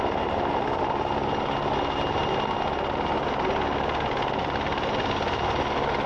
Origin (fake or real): real